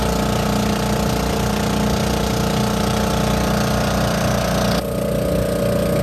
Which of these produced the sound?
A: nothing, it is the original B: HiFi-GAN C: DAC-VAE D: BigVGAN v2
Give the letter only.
A